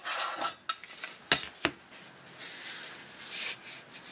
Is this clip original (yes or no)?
yes